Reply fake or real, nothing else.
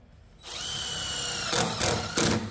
real